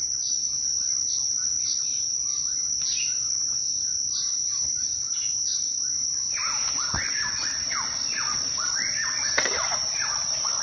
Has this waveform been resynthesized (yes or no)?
no